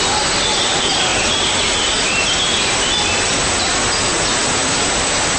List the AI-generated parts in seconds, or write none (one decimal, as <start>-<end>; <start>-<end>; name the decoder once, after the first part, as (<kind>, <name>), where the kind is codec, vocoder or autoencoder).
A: none